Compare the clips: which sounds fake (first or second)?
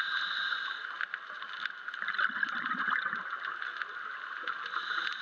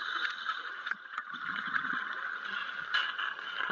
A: second